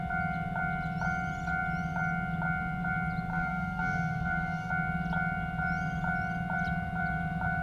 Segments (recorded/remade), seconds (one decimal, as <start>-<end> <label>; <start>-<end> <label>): 0.0-3.3 recorded; 3.3-4.7 remade; 4.7-7.6 recorded